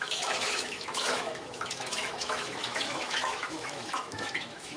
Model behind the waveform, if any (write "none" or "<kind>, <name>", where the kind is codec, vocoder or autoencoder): autoencoder, DAC-VAE